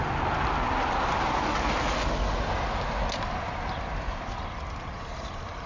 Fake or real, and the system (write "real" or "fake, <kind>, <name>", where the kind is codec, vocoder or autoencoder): real